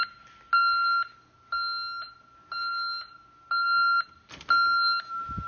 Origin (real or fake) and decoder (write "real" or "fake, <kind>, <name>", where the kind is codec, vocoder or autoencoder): real